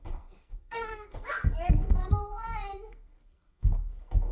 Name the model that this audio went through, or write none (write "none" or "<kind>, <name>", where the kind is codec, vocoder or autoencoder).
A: codec, SNAC